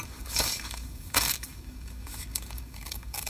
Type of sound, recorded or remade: remade